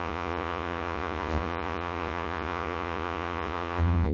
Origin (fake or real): fake